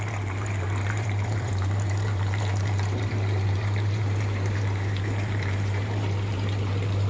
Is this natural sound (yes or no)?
no